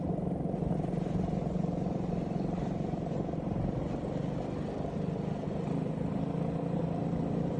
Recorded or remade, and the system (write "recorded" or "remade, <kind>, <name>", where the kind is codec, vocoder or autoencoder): recorded